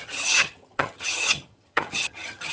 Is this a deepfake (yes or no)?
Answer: yes